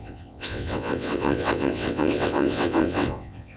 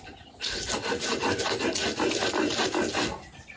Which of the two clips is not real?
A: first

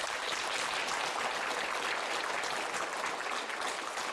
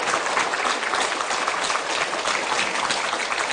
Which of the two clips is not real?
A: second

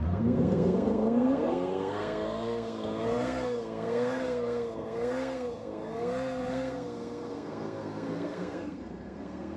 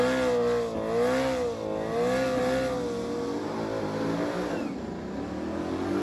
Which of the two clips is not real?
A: first